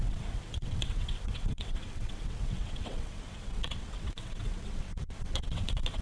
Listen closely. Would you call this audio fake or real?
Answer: fake